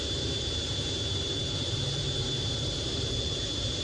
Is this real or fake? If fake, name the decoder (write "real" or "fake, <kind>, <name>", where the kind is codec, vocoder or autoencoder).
fake, vocoder, BigVGAN v2